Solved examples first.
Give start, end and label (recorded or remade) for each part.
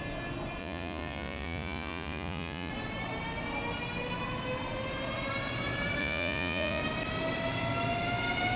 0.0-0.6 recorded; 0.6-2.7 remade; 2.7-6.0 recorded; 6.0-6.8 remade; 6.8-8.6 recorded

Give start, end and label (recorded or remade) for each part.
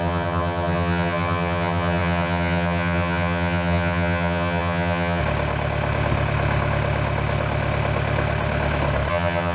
0.0-5.2 remade; 5.2-9.1 recorded; 9.1-9.5 remade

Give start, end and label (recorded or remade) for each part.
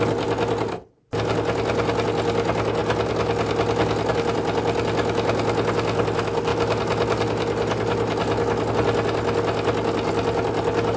0.0-11.0 recorded